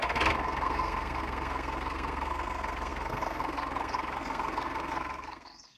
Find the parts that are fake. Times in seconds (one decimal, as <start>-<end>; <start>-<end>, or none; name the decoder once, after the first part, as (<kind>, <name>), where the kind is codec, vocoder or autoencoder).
0.0-5.8 (codec, SNAC)

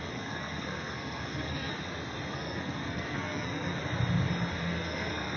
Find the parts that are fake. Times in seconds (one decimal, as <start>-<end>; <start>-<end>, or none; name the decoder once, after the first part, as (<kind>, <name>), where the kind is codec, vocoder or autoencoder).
0.0-1.7 (codec, SNAC); 2.3-3.8; 4.6-5.4

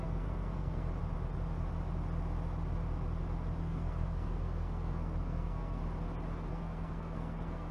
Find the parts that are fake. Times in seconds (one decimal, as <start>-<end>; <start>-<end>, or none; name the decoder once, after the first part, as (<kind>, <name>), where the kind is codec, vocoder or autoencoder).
0.0-0.9 (codec, SNAC); 3.6-5.8; 6.5-7.7

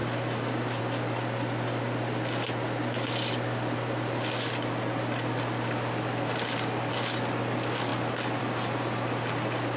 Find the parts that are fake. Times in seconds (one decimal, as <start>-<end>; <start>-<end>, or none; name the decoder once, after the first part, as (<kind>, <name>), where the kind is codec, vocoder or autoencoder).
none

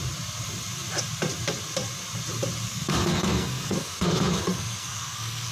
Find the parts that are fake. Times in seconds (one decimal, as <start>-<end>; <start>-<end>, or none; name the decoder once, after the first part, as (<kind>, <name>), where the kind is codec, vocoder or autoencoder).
2.7-5.5 (codec, SNAC)

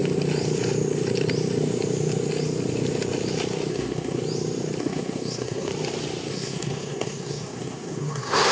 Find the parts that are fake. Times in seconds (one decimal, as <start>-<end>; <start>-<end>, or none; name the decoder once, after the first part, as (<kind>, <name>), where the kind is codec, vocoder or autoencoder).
3.7-4.2 (codec, SNAC); 4.8-5.7; 6.3-8.5

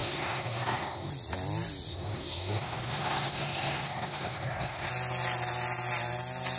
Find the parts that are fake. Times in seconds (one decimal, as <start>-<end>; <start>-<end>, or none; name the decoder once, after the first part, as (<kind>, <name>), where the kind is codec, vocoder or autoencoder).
0.0-1.1 (codec, SNAC); 1.9-4.9

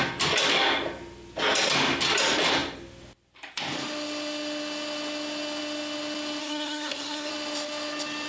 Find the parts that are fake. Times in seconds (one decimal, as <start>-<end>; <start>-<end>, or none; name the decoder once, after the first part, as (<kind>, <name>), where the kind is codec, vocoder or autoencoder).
6.4-7.3 (codec, SNAC)